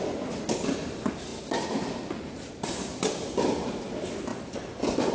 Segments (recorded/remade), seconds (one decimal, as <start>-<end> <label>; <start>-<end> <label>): 0.0-5.1 recorded